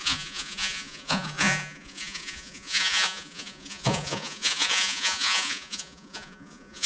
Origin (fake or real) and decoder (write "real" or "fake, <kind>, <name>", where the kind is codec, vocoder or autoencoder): fake, vocoder, Vocos